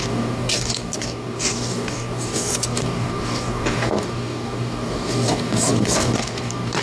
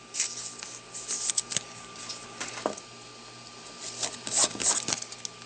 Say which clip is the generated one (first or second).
first